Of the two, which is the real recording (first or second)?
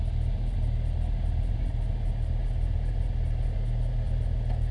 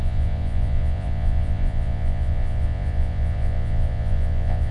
first